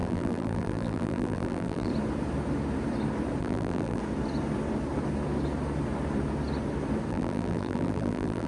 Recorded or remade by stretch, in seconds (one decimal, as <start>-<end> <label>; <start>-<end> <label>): 0.0-1.9 remade; 1.9-3.4 recorded; 3.4-4.0 remade; 4.0-7.1 recorded; 7.1-8.5 remade